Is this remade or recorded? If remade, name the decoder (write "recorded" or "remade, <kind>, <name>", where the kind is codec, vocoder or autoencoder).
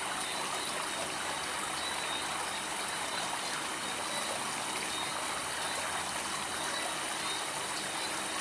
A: recorded